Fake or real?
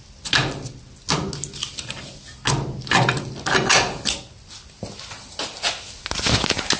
real